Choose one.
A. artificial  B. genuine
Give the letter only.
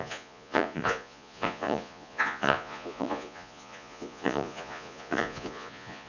A